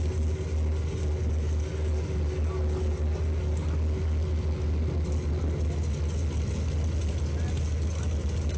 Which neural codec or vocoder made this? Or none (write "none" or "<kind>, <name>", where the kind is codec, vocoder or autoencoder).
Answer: none